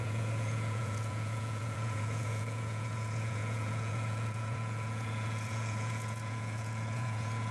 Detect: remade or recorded remade